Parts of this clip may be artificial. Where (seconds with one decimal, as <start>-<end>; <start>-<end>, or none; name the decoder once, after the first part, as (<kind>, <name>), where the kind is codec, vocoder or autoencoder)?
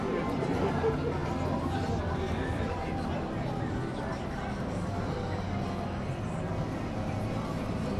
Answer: none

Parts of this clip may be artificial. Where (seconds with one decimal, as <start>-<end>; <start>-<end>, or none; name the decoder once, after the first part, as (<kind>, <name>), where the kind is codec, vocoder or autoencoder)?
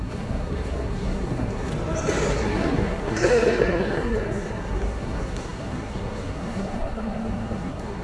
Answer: 0.0-1.7 (codec, SNAC); 2.3-8.0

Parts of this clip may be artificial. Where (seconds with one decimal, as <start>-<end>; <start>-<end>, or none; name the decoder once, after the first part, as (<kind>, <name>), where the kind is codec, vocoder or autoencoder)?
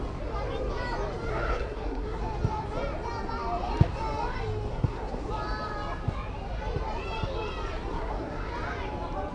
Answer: 1.3-2.2 (codec, SNAC); 4.7-5.2; 7.9-8.5